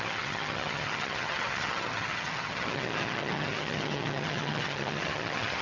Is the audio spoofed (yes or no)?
yes